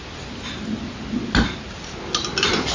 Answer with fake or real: real